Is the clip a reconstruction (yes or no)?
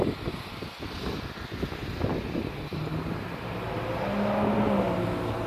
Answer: no